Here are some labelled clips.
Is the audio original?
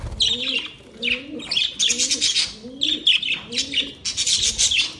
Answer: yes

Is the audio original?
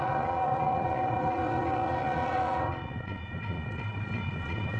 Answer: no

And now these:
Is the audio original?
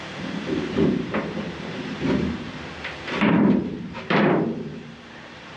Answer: no